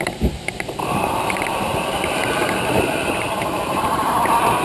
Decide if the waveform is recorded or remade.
remade